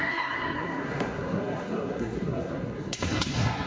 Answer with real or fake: fake